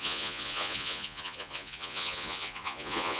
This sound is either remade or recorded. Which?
remade